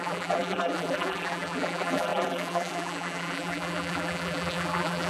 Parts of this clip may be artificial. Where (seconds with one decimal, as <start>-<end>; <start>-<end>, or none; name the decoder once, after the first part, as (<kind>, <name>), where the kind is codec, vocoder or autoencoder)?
0.0-5.1 (vocoder, BigVGAN v2)